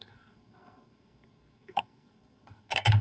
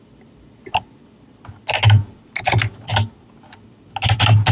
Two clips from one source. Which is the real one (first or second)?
second